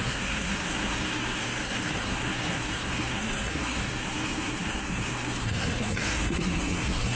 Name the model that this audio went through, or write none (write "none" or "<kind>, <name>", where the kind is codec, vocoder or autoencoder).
codec, SNAC